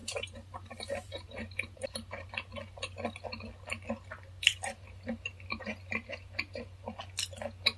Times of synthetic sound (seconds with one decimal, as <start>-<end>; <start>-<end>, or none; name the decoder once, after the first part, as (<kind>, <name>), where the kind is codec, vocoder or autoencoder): 0.0-2.3 (vocoder, BigVGAN v2); 4.5-6.9